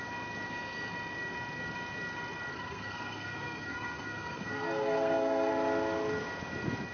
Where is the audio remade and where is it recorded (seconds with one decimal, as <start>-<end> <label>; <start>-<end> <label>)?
0.0-2.5 recorded; 2.5-5.5 remade; 5.5-6.9 recorded